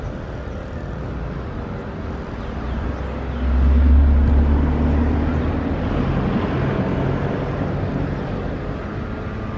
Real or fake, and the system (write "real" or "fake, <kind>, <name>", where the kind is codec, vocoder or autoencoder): real